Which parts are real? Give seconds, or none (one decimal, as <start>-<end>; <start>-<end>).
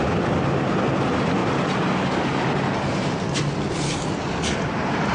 0.0-5.1